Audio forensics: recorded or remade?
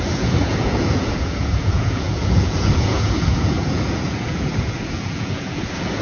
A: remade